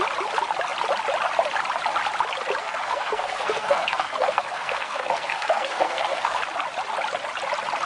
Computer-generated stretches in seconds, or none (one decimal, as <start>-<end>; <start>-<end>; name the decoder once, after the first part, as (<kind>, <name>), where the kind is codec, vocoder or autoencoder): 2.6-6.4 (codec, SNAC)